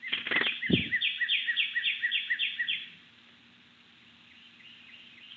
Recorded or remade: recorded